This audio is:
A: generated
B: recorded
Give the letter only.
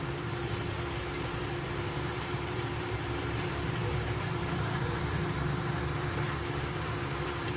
A